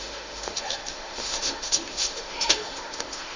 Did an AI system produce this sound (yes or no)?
yes